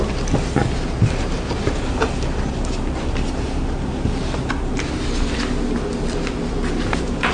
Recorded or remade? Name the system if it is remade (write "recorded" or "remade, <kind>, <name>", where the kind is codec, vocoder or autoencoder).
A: recorded